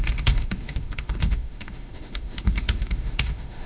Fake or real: fake